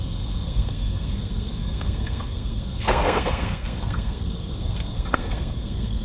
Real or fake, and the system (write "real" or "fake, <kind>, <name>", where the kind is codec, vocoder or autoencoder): fake, codec, SNAC